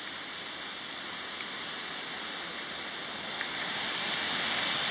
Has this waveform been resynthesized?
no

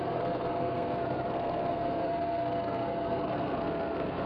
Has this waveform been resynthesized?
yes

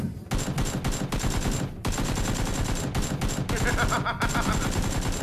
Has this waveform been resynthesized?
no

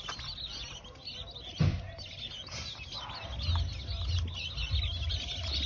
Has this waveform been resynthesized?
no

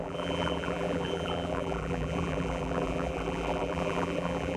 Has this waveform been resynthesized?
yes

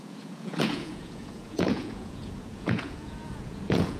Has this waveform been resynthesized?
yes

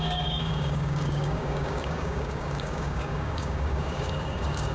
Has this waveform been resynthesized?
yes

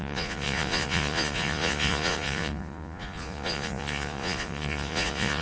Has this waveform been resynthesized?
yes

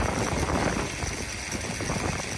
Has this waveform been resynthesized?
no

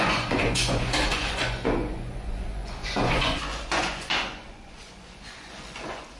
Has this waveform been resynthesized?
yes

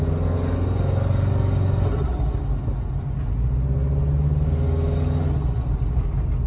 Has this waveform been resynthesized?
no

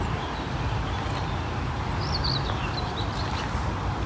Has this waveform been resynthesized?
no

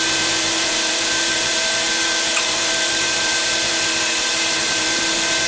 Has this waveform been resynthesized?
yes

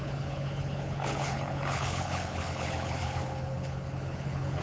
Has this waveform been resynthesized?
yes